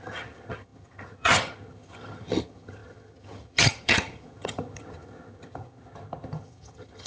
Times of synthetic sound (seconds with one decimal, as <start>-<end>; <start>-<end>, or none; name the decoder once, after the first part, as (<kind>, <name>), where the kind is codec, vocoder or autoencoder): 0.0-7.1 (vocoder, HiFi-GAN)